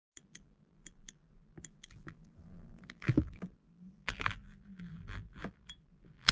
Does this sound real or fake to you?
fake